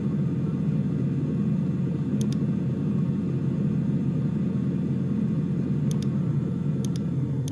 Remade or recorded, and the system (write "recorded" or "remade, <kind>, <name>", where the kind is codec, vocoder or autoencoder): recorded